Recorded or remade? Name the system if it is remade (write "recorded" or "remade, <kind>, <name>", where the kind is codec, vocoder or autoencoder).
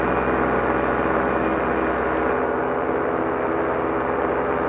recorded